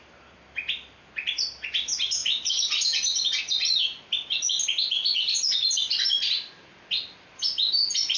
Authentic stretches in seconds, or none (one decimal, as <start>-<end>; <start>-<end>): 0.0-8.2